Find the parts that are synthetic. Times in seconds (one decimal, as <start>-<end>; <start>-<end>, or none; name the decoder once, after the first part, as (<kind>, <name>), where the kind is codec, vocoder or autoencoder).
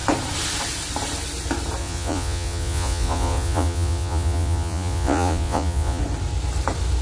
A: 1.8-6.0 (vocoder, Vocos)